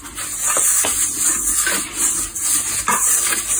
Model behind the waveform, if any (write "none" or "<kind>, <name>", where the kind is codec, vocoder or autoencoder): none